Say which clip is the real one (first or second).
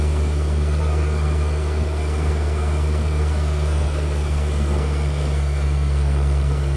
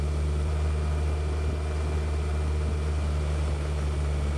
second